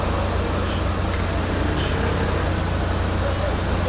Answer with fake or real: real